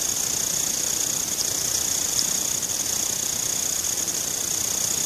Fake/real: real